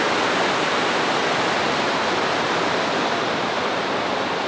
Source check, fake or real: fake